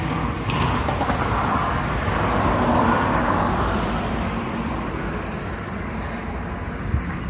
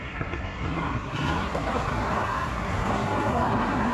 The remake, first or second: second